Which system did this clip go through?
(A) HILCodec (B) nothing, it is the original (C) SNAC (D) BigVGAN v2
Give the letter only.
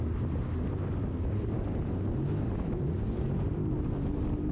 B